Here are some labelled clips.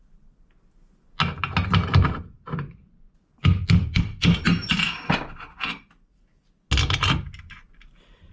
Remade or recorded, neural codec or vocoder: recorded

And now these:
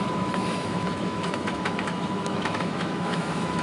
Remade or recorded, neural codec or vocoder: remade, autoencoder, DAC-VAE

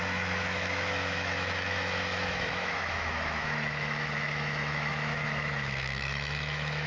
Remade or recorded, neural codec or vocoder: remade, autoencoder, DAC-VAE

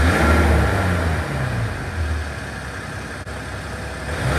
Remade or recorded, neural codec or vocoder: recorded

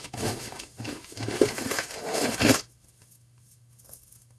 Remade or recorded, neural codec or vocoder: remade, autoencoder, DAC-VAE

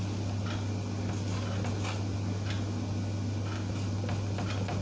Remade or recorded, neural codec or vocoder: recorded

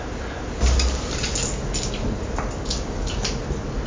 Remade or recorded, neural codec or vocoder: recorded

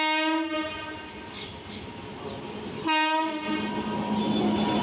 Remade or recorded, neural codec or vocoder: recorded